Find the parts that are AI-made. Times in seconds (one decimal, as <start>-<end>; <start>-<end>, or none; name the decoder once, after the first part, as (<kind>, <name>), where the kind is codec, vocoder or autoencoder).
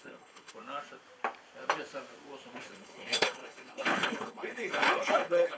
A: 0.0-0.5 (codec, HILCodec); 2.7-5.6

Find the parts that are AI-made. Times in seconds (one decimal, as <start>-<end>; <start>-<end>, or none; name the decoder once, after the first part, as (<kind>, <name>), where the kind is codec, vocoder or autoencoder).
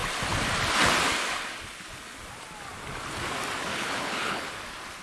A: 3.7-4.5 (codec, HILCodec)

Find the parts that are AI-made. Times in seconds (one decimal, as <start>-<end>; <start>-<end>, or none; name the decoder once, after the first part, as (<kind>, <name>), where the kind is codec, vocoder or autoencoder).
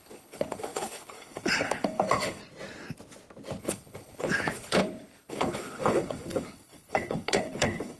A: 0.0-2.4 (codec, HILCodec); 3.6-8.0